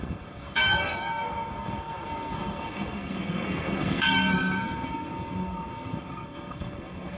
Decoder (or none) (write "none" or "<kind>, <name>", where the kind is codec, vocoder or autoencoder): codec, SNAC